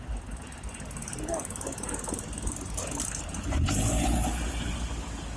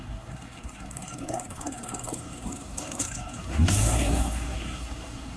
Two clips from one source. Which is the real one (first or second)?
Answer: first